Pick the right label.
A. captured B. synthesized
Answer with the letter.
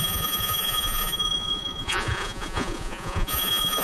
B